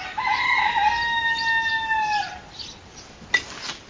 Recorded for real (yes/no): yes